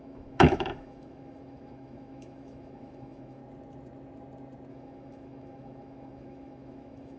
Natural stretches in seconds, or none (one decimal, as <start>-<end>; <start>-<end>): 3.4-4.7